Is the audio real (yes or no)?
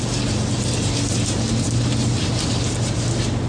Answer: yes